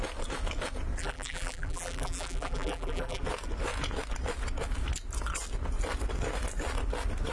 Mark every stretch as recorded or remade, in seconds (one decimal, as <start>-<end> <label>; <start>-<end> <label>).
0.0-1.0 recorded; 1.0-3.2 remade; 3.2-7.3 recorded